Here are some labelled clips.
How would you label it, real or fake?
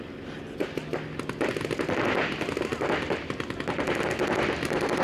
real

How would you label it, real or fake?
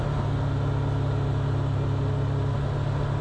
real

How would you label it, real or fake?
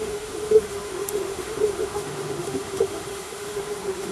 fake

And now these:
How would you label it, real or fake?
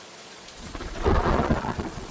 fake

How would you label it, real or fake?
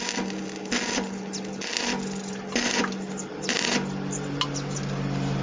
real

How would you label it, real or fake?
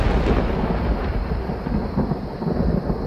real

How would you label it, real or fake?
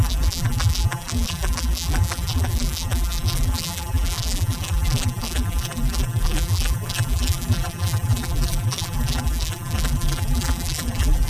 fake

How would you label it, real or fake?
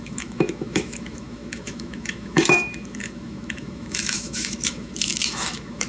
fake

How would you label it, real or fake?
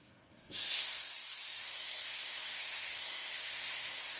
fake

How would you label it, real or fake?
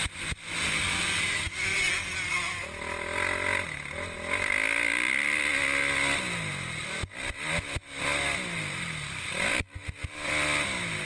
real